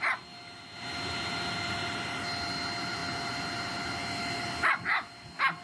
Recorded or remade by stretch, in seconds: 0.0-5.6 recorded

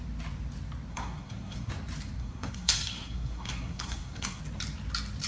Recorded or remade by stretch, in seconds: 0.0-0.9 recorded; 0.9-1.7 remade; 1.7-2.2 recorded; 2.2-4.4 remade; 4.4-5.3 recorded

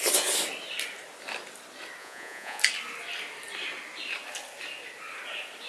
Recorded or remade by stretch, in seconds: 0.0-2.0 recorded; 2.0-2.6 remade; 2.6-5.7 recorded

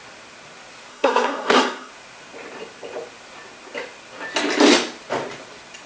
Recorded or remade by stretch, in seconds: 0.0-0.9 recorded; 0.9-1.9 remade; 1.9-5.9 recorded

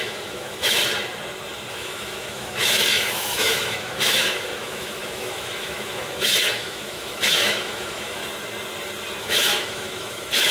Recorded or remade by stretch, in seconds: 0.0-0.8 remade; 0.8-1.7 recorded; 1.7-8.2 remade; 8.2-9.2 recorded; 9.2-10.5 remade

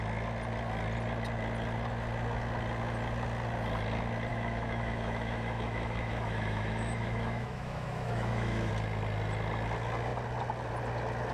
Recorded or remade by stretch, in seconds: 0.0-4.3 recorded; 4.3-8.7 remade; 8.7-11.3 recorded

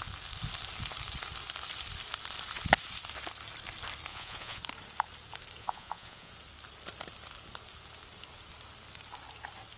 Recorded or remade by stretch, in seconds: 0.0-4.1 recorded; 4.1-4.6 remade; 4.6-5.6 recorded; 5.6-6.3 remade; 6.3-9.8 recorded